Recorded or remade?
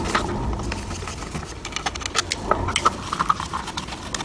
recorded